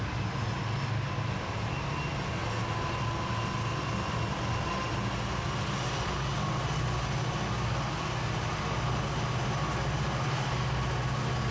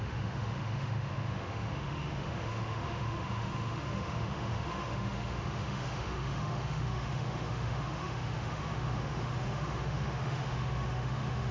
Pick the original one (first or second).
first